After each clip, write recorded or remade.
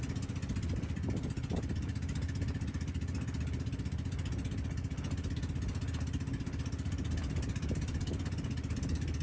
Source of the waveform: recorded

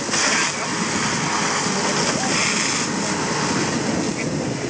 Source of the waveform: recorded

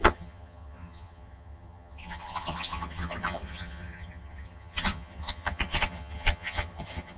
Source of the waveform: remade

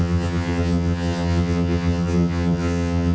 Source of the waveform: remade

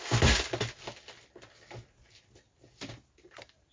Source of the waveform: recorded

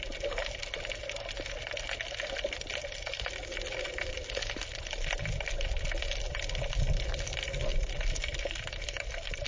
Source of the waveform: recorded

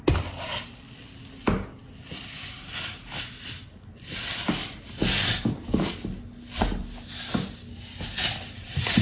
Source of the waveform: recorded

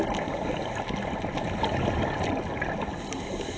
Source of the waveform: recorded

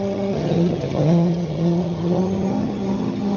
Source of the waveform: remade